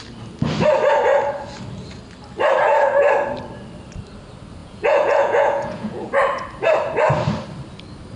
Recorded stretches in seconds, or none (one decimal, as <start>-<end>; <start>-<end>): 0.0-4.6; 6.1-8.2